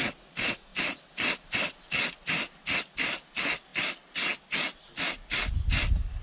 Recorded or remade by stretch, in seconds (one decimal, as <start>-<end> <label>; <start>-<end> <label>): 0.0-6.2 recorded